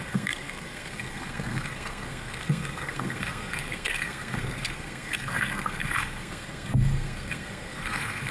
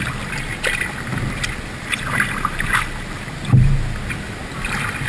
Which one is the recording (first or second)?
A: second